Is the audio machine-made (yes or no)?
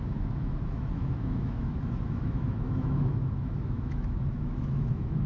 yes